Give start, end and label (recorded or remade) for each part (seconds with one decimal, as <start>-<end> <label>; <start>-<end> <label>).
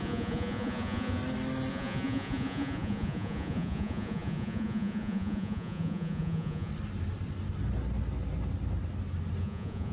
0.0-1.2 remade; 1.2-1.7 recorded; 1.7-6.7 remade; 6.7-9.4 recorded; 9.4-9.9 remade